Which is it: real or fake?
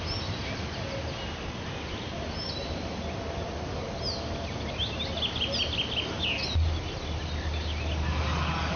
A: real